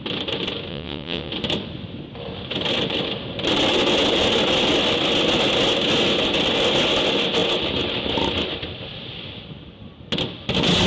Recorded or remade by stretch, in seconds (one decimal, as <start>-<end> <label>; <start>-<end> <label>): 0.0-0.7 recorded; 0.7-1.3 remade; 1.3-10.9 recorded